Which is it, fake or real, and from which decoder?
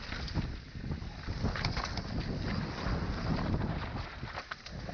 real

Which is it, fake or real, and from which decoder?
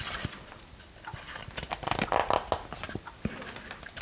real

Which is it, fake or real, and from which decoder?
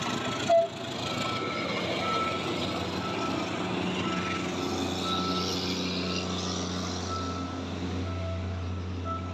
real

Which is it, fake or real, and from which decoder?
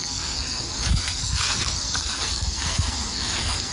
fake, codec, SNAC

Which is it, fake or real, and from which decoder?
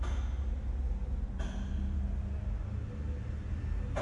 real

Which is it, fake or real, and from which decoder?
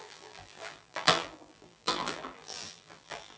fake, vocoder, BigVGAN v2